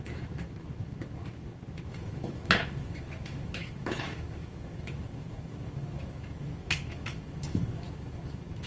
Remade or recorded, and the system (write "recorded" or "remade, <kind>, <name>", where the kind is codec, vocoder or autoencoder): remade, autoencoder, DAC-VAE